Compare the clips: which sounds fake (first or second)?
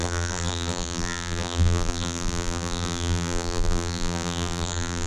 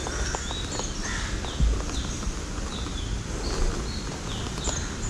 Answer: first